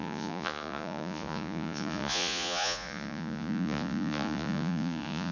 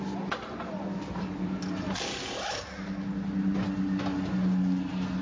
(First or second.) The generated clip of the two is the first